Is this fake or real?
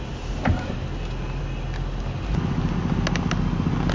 real